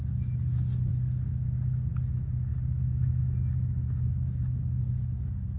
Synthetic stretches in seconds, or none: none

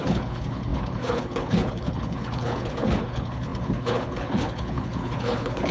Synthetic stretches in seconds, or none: 0.0-5.7 (codec, HILCodec)

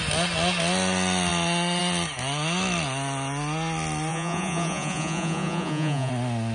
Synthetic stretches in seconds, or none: 4.1-6.1 (vocoder, Vocos)

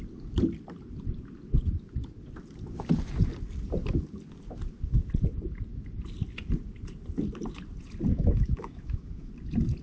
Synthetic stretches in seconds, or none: 8.1-9.3 (autoencoder, DAC-VAE)

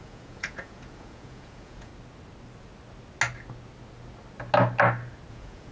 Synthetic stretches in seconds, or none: 0.0-1.9 (vocoder, Vocos); 5.3-5.7

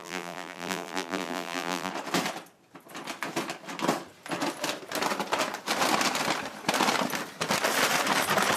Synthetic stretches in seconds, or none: 0.0-1.9 (vocoder, BigVGAN v2)

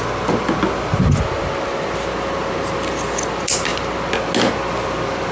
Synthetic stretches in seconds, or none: none

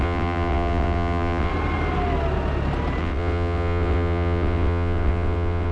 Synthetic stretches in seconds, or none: 0.0-1.5 (vocoder, WaveNeXt); 3.0-5.7